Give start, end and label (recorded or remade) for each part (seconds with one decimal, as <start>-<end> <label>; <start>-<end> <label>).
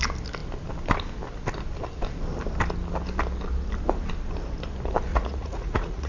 0.0-5.1 recorded; 5.1-6.1 remade